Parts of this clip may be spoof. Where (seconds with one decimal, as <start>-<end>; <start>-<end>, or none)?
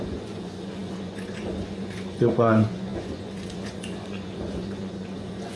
0.0-5.6